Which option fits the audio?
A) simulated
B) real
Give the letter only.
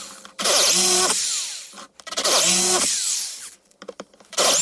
B